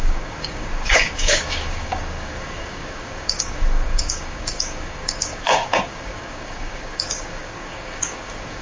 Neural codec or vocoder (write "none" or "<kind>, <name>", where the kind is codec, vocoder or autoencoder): codec, DAC